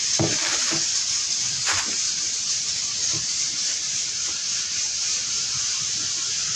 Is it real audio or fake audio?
real